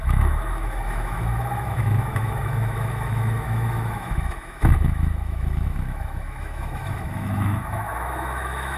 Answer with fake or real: fake